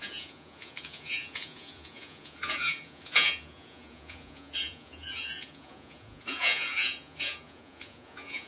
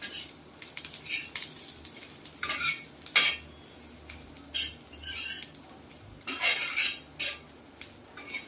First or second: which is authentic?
second